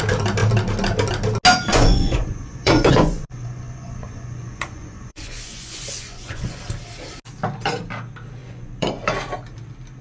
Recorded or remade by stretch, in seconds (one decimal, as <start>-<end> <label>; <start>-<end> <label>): 0.0-1.7 recorded; 1.7-6.6 remade; 6.6-8.4 recorded; 8.4-9.0 remade; 9.0-10.0 recorded